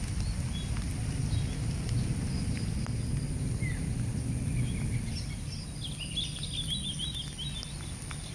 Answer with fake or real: real